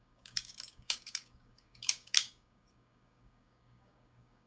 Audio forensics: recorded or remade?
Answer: remade